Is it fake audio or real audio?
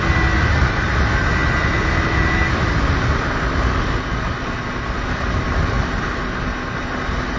real